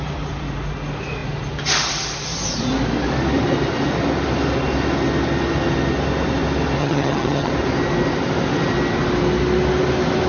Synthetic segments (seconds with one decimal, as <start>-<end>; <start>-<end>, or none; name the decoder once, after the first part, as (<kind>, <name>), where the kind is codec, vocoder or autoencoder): 6.8-7.5 (vocoder, HiFi-GAN)

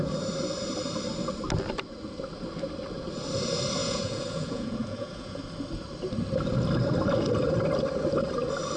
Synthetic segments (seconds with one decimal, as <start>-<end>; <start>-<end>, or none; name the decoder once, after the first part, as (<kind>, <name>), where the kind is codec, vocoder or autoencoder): 3.8-5.4 (vocoder, Vocos)

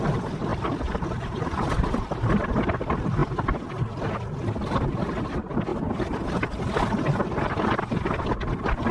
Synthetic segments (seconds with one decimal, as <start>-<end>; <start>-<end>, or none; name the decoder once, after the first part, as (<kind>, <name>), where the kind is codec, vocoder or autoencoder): none